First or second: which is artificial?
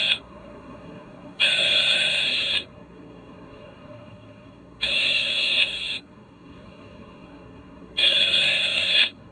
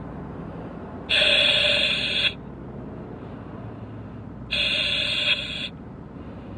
first